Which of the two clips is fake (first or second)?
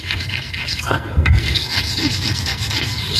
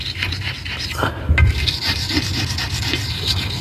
first